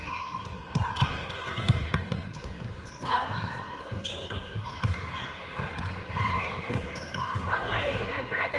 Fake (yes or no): yes